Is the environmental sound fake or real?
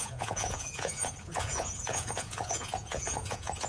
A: fake